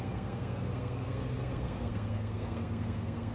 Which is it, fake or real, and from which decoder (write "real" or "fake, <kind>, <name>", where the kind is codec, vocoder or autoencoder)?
fake, codec, SNAC